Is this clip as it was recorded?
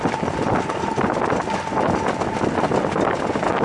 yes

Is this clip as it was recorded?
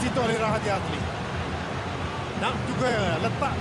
no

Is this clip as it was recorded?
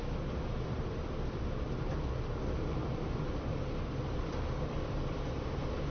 yes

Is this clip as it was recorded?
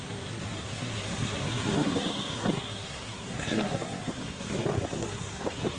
no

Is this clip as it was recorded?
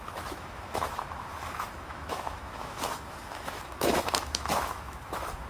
no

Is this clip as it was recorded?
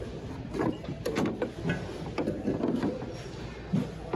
yes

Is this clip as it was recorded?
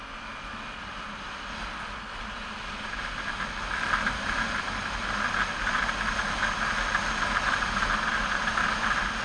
yes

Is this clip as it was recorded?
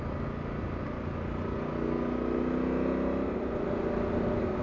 yes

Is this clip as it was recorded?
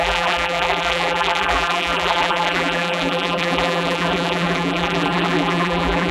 no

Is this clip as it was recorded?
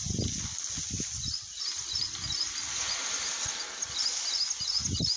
yes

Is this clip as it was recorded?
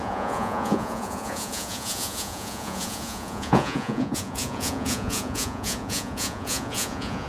no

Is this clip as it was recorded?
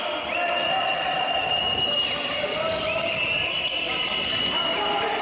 yes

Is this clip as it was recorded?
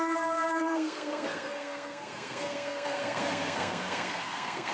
no